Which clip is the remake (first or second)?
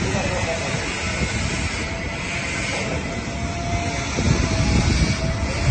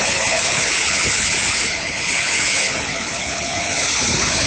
second